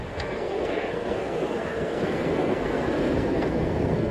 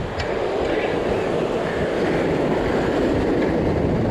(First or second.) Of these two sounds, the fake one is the first